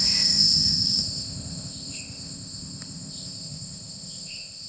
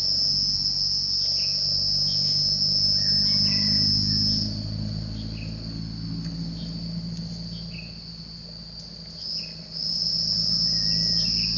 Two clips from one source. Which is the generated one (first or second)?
first